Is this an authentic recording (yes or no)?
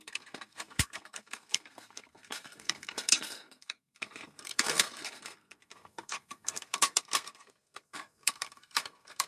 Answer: no